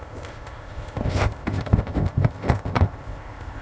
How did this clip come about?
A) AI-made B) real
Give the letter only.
A